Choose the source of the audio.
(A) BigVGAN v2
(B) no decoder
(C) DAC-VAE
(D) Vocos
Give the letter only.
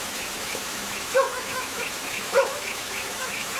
C